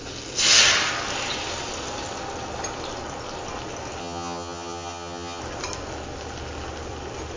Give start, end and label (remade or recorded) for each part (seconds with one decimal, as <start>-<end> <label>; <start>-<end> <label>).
0.0-4.0 recorded; 4.0-5.4 remade; 5.4-7.4 recorded